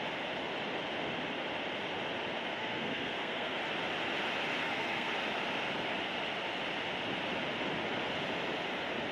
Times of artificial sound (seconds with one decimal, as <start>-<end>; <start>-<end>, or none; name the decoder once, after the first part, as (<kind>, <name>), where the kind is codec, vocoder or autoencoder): 2.5-3.6 (codec, SNAC); 4.6-5.1